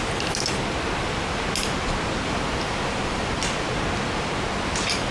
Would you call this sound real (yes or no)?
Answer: yes